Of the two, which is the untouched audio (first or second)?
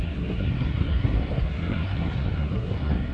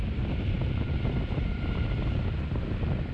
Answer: second